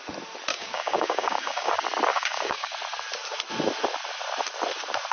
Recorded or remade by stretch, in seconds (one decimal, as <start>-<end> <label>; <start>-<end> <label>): 0.0-0.5 recorded; 0.5-1.7 remade; 1.7-2.1 recorded; 2.1-2.7 remade; 2.7-5.1 recorded